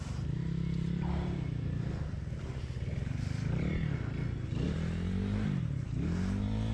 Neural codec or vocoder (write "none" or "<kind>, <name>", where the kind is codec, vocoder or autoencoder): none